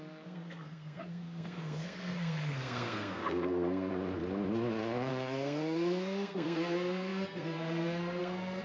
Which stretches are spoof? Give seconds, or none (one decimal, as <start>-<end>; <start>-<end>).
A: 0.0-3.9; 5.1-8.6